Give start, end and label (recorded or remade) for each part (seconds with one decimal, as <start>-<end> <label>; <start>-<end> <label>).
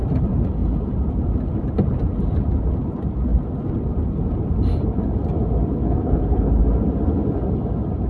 0.0-5.8 recorded; 5.8-6.6 remade; 6.6-8.1 recorded